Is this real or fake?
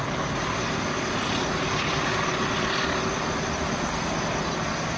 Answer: real